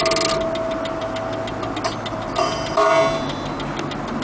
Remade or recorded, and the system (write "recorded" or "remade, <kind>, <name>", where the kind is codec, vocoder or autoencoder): recorded